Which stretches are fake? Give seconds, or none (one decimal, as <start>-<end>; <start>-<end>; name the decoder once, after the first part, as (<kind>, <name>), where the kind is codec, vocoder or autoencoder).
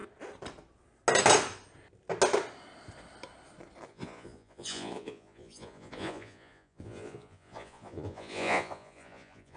3.9-9.6 (vocoder, Vocos)